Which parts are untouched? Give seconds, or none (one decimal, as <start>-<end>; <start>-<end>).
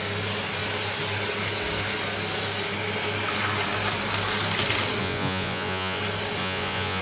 0.0-5.0; 6.0-6.4